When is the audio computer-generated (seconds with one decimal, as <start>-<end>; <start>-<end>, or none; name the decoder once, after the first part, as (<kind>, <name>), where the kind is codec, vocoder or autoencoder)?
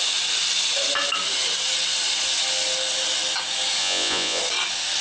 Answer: 3.8-4.4 (vocoder, Vocos)